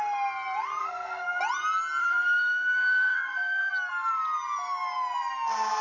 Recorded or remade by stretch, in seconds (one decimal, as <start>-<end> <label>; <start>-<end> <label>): 0.0-0.8 recorded; 0.8-1.4 remade; 1.4-2.0 recorded; 2.0-3.7 remade; 3.7-5.8 recorded